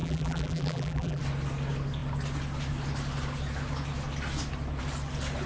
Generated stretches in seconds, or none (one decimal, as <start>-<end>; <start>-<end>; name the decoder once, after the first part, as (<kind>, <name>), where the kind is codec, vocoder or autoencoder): 0.0-1.2 (vocoder, BigVGAN v2)